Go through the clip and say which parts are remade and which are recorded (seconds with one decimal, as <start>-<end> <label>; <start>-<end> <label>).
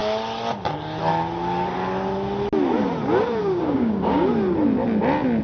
0.0-3.4 recorded; 3.4-4.3 remade; 4.3-5.4 recorded